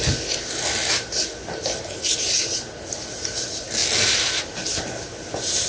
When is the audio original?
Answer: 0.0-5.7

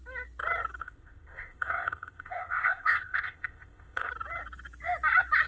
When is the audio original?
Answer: 0.0-0.8; 4.1-5.5

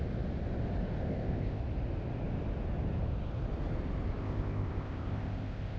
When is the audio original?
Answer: 0.0-1.0; 1.6-4.2

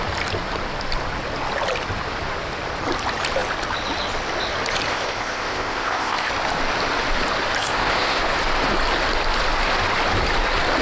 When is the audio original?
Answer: 0.0-4.9; 6.3-7.6; 8.2-10.8

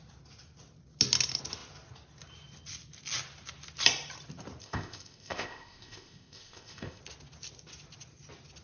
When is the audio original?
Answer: 0.0-4.6; 7.0-8.6

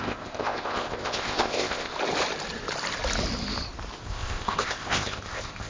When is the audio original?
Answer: 1.9-4.0

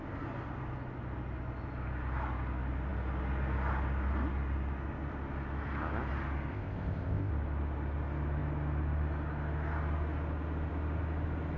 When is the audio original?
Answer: 0.0-6.5; 7.3-11.6